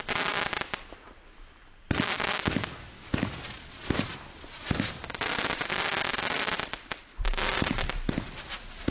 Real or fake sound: real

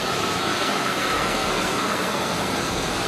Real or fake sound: fake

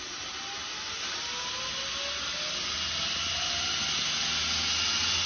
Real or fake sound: real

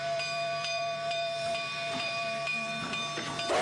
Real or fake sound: fake